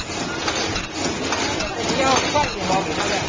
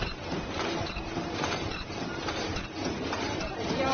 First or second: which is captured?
first